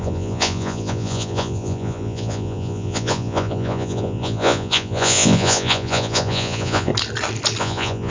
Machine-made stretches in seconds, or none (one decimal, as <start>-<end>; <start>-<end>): 0.0-6.9; 7.6-8.1